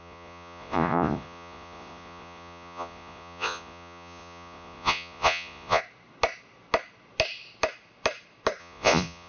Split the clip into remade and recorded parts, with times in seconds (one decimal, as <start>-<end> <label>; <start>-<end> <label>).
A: 0.0-5.8 remade; 5.8-8.6 recorded; 8.6-9.3 remade